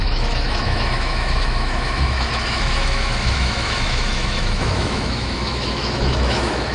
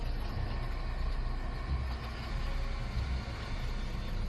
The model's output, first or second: first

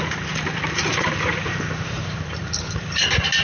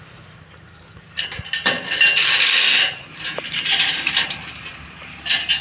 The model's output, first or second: first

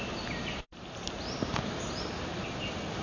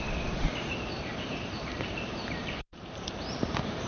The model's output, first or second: second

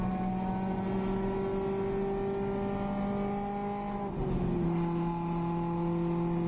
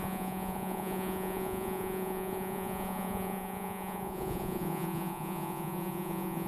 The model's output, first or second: second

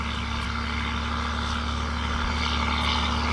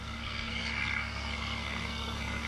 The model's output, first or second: second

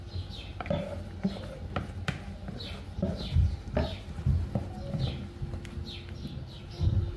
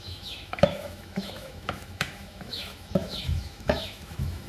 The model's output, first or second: second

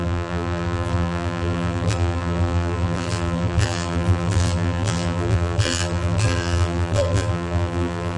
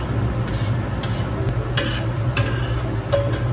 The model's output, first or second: first